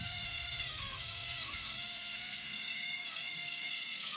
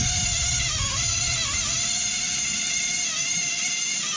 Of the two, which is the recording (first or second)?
second